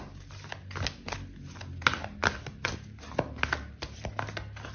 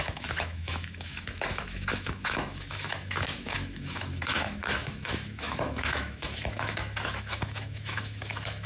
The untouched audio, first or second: first